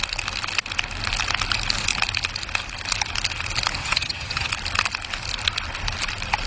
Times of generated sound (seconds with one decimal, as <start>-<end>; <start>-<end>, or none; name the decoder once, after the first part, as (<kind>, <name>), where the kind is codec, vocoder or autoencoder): 3.8-4.5 (vocoder, HiFi-GAN)